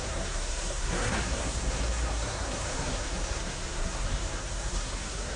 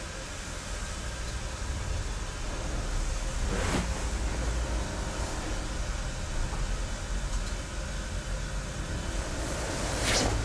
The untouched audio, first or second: second